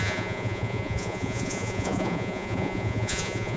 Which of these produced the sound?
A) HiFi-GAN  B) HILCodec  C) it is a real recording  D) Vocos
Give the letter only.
D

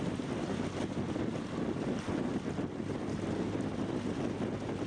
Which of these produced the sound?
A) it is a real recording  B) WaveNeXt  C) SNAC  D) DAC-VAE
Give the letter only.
A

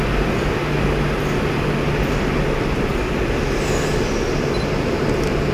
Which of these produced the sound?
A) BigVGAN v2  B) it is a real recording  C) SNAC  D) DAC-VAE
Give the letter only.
B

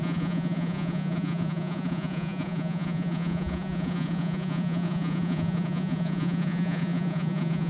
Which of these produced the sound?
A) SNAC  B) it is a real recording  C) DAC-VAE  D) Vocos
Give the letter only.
D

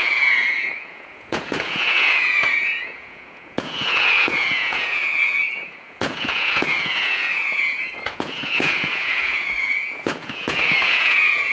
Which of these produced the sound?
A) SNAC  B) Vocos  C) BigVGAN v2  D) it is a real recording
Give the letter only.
B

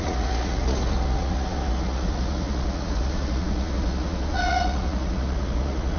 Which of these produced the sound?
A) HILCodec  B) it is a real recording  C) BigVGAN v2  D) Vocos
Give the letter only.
D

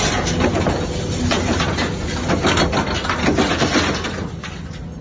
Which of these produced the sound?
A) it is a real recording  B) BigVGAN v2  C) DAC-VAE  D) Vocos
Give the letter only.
A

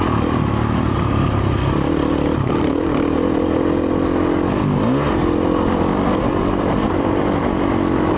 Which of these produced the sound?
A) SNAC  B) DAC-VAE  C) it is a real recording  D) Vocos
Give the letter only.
C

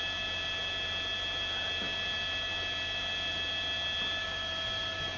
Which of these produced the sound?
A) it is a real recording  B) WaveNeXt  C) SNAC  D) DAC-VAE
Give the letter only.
A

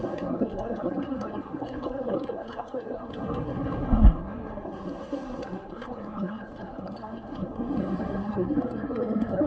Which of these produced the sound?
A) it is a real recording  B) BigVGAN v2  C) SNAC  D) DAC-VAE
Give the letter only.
C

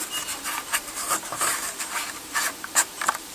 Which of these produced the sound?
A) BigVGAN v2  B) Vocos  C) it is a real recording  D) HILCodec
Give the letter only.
A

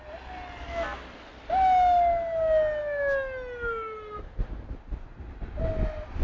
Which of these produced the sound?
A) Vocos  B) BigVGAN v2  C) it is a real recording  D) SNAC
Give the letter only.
C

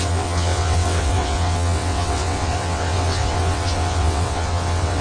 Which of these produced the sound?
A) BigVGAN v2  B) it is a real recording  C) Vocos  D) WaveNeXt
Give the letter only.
D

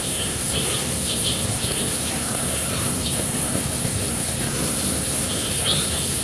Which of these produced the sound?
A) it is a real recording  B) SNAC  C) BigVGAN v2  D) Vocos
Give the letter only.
B